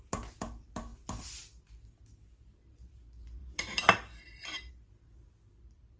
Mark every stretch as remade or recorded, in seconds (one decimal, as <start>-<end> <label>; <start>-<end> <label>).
0.0-3.4 recorded; 3.4-4.7 remade; 4.7-6.0 recorded